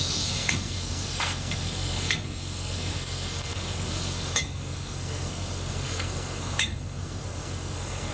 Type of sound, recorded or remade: remade